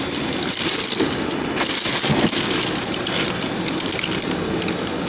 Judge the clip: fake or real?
real